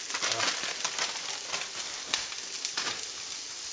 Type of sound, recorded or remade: recorded